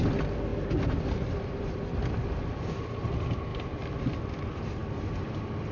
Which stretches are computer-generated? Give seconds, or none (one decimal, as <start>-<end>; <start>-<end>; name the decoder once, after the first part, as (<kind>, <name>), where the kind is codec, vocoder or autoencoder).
none